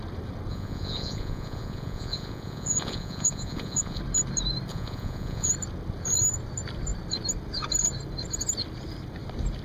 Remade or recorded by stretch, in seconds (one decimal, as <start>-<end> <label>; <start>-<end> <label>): 0.0-0.5 recorded; 0.5-4.0 remade; 4.0-4.7 recorded; 4.7-5.5 remade; 5.5-9.6 recorded

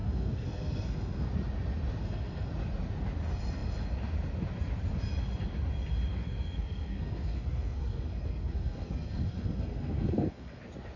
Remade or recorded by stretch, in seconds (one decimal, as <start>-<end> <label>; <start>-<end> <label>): 0.0-1.3 remade; 1.3-2.0 recorded; 2.0-2.5 remade; 2.5-6.2 recorded; 6.2-10.6 remade; 10.6-11.0 recorded

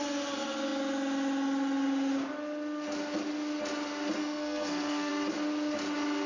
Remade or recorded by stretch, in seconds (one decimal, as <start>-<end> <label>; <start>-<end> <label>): 0.0-4.2 recorded; 4.2-5.1 remade; 5.1-6.3 recorded

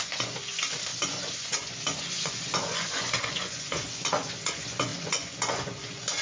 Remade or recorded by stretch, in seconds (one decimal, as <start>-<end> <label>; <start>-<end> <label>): 0.0-6.2 remade

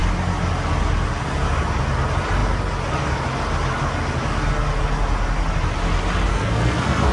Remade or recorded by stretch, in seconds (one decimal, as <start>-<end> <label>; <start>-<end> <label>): 0.0-6.3 recorded; 6.3-7.1 remade

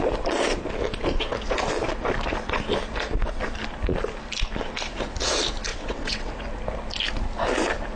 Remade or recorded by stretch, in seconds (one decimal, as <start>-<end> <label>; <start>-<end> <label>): 0.0-5.7 recorded; 5.7-6.3 remade; 6.3-8.0 recorded

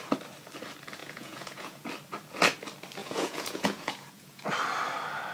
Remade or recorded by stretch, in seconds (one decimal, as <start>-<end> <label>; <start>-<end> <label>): 0.0-1.0 recorded; 1.0-1.9 remade; 1.9-3.0 recorded; 3.0-4.4 remade; 4.4-5.3 recorded